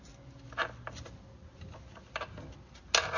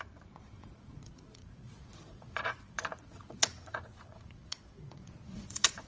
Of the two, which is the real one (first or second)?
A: first